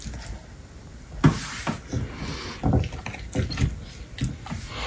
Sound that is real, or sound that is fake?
real